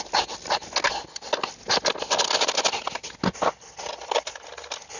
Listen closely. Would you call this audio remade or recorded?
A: recorded